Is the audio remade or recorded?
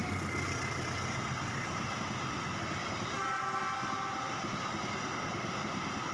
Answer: recorded